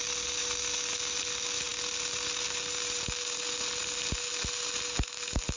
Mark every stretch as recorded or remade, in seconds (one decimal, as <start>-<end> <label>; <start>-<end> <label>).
0.0-5.6 recorded